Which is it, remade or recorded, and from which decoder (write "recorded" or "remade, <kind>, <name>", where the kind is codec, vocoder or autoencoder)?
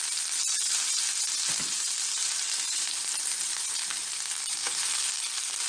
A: recorded